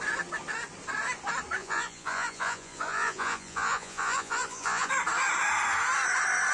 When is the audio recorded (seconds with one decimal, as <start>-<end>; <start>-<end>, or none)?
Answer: 0.0-1.6; 4.9-6.5